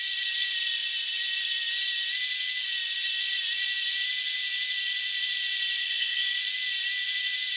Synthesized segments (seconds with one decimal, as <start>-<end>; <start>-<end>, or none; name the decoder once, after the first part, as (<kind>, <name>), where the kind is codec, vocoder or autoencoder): 5.8-6.4 (codec, SNAC)